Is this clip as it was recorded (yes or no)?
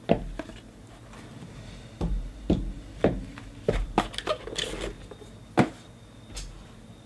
yes